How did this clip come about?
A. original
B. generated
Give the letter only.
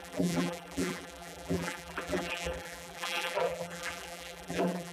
B